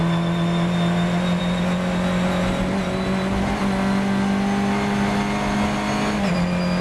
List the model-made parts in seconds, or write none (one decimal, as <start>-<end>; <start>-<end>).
none